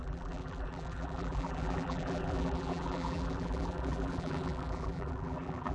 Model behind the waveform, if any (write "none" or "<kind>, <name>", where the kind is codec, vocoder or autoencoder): vocoder, BigVGAN v2